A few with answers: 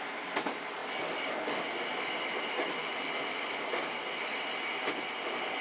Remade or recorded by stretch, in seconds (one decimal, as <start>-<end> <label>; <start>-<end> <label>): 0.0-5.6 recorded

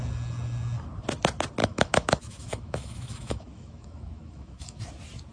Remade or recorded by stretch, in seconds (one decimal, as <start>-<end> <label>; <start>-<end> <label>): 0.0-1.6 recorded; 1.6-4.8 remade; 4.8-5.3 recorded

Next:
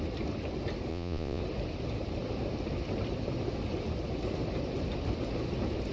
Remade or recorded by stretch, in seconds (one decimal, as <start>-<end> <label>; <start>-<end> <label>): 0.0-0.9 recorded; 0.9-1.4 remade; 1.4-5.9 recorded

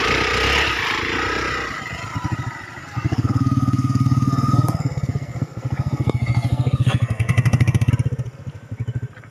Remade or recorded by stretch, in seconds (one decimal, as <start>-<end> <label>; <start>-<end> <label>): 0.0-2.8 recorded; 2.8-7.9 remade; 7.9-9.3 recorded

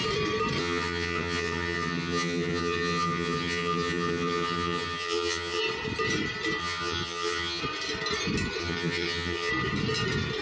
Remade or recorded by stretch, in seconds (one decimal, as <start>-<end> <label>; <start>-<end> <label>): 0.0-0.6 recorded; 0.6-5.6 remade; 5.6-6.6 recorded; 6.6-7.6 remade; 7.6-8.6 recorded; 8.6-9.5 remade; 9.5-10.4 recorded